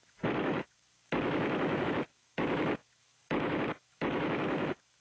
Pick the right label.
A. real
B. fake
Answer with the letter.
B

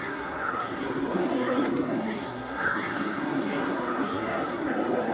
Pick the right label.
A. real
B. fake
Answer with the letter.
B